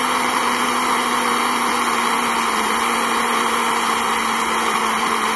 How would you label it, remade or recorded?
recorded